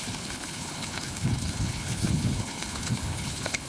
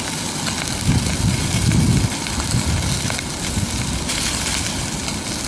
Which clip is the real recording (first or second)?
second